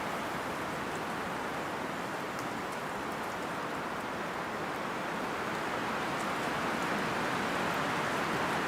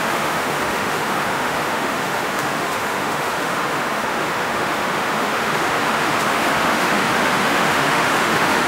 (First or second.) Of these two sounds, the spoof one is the second